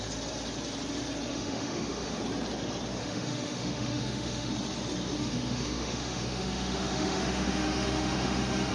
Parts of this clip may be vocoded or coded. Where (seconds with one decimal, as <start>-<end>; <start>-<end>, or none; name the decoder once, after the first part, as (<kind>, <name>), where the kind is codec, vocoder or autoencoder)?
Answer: 1.3-2.2 (autoencoder, DAC-VAE); 3.0-4.5; 5.3-8.7